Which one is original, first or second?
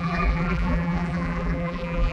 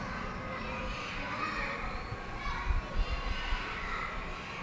second